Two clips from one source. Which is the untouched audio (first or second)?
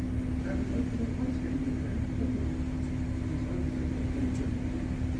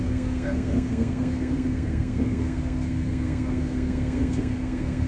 first